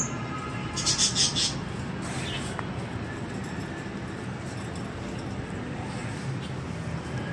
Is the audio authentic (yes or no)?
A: yes